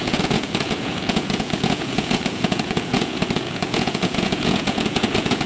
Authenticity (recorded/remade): remade